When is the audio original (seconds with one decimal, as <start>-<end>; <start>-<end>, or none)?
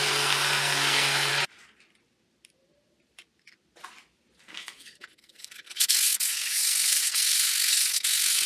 1.3-4.4